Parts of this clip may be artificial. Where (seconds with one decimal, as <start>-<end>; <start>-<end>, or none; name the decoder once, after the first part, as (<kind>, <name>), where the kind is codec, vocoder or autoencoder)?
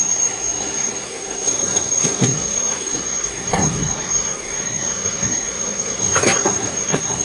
0.0-7.2 (codec, SNAC)